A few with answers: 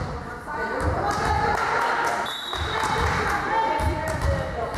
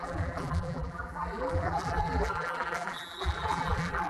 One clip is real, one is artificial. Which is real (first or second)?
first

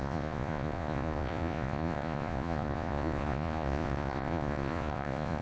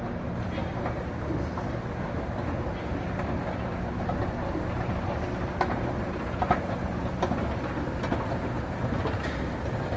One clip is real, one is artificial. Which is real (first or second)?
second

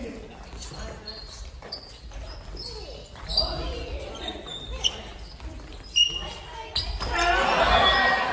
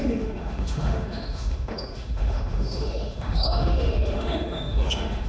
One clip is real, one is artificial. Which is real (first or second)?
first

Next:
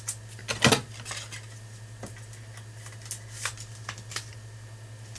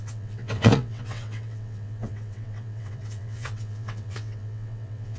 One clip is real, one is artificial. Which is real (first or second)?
first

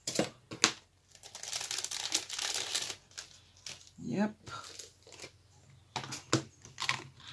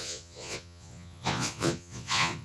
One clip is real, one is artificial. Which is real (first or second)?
first